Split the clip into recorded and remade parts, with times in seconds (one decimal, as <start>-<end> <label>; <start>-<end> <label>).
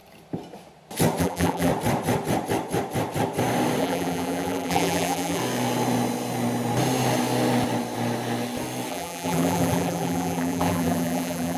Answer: 0.0-1.2 recorded; 1.2-1.7 remade; 1.7-3.8 recorded; 3.8-5.4 remade; 5.4-8.9 recorded; 8.9-11.6 remade